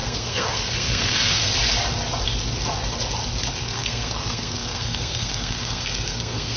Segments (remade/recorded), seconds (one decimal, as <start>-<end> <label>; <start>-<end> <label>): 0.0-1.5 remade; 1.5-3.5 recorded; 3.5-6.6 remade